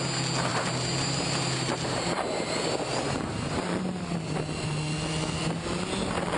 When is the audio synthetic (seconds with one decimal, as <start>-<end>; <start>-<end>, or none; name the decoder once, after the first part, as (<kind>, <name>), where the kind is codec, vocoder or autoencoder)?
0.5-4.0 (vocoder, BigVGAN v2)

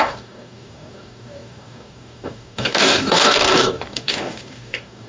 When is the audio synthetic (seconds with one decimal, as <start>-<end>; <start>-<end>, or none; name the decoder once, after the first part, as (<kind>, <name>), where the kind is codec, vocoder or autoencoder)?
0.0-5.1 (codec, DAC)

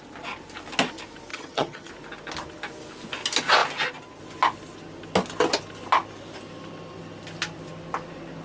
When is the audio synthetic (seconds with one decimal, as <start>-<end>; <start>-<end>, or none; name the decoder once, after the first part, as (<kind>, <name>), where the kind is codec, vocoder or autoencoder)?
1.3-1.9 (vocoder, HiFi-GAN)

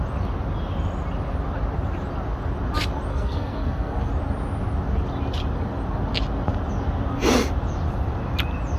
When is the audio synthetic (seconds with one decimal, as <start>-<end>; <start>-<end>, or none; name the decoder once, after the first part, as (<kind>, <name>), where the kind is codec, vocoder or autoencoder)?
3.1-4.1 (codec, SNAC)

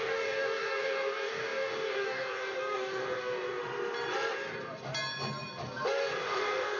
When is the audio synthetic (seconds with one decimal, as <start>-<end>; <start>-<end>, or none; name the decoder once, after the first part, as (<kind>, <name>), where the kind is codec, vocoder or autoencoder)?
0.0-3.6 (codec, DAC); 6.2-6.8